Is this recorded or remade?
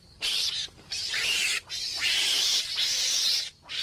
remade